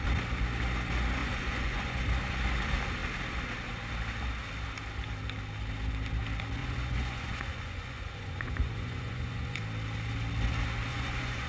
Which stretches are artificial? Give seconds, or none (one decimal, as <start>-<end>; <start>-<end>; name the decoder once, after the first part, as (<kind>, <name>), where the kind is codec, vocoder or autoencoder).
1.2-2.1 (vocoder, Vocos); 6.6-9.6; 10.9-11.5